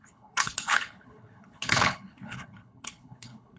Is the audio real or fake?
fake